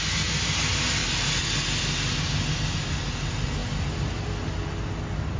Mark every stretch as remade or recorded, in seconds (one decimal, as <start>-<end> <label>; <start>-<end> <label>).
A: 0.0-5.4 recorded